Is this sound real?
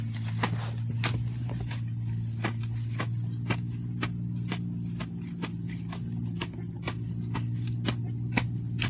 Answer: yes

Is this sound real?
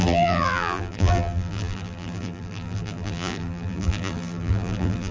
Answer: no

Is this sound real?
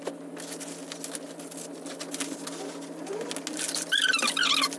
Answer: yes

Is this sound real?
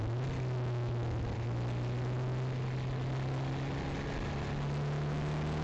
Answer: yes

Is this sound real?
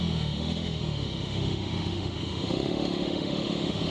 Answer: no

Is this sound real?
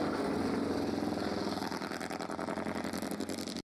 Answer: yes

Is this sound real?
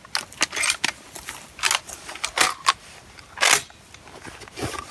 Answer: yes